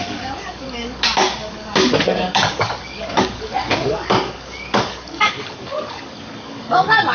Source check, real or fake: fake